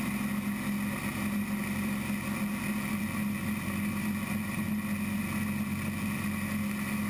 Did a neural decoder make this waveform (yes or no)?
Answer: no